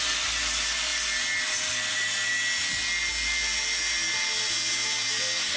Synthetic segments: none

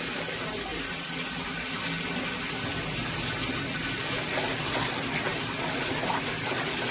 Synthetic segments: none

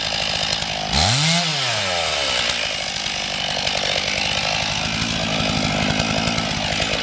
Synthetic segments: none

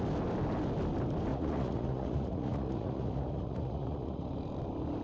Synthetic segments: 1.3-4.3

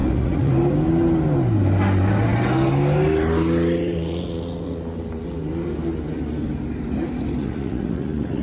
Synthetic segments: 0.0-0.5; 7.4-8.4

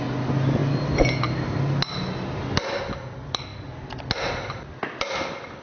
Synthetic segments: none

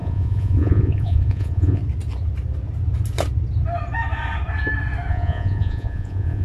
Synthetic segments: 0.0-1.8; 5.1-6.4